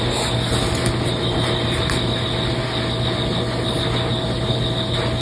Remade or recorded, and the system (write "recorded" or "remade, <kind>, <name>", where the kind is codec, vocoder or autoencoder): recorded